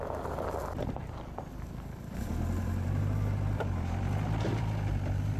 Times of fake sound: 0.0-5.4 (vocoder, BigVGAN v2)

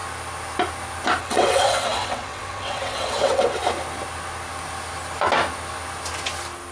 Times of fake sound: 1.2-3.6 (vocoder, WaveNeXt)

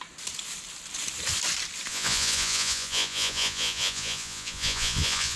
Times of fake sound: 1.9-5.4 (vocoder, Vocos)

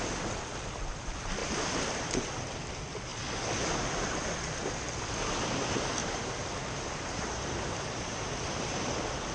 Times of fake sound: 1.4-2.4 (vocoder, BigVGAN v2); 6.0-8.2

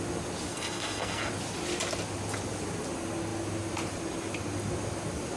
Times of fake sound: 0.5-1.3 (codec, SNAC)

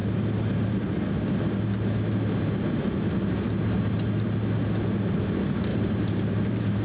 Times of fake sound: 5.7-6.8 (vocoder, BigVGAN v2)

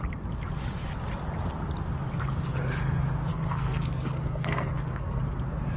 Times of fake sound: 3.3-5.2 (codec, SNAC)

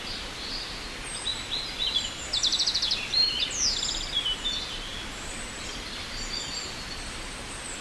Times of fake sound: 1.3-2.2 (vocoder, BigVGAN v2); 4.9-5.4